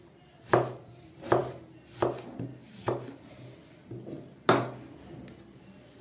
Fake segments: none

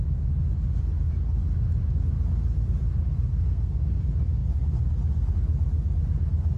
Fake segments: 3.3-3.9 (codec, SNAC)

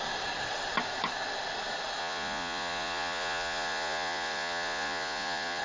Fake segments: 2.0-5.6 (vocoder, Vocos)

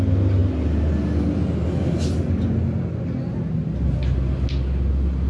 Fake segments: none